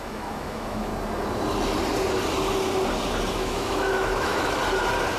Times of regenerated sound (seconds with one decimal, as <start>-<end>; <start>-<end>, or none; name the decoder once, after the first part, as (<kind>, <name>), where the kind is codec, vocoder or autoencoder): 0.0-0.9 (autoencoder, DAC-VAE); 3.3-4.6